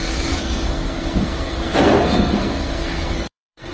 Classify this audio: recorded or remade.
remade